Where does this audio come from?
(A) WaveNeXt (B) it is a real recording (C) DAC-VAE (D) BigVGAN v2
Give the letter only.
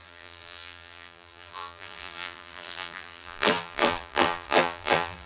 D